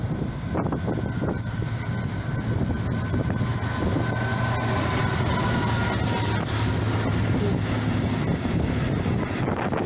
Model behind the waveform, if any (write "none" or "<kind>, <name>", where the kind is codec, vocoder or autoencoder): none